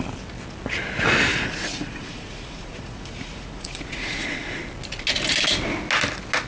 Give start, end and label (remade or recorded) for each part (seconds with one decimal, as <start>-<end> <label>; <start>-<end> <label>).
0.0-1.3 recorded; 1.3-4.6 remade; 4.6-6.5 recorded